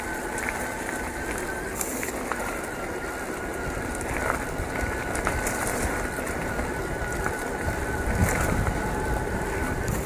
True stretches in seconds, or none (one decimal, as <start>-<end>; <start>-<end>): 0.0-8.2